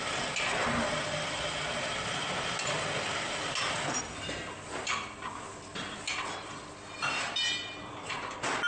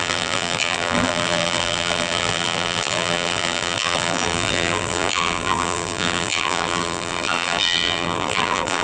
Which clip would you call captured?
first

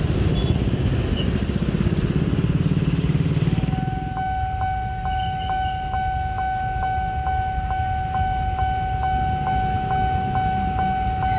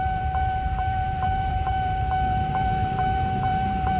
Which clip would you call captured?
first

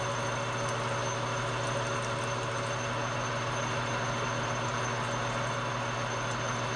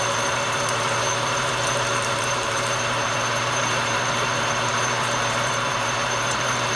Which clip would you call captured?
first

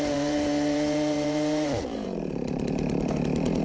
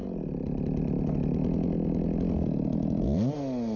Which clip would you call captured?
second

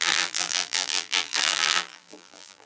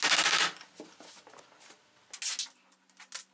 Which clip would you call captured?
second